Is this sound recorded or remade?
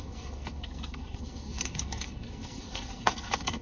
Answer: remade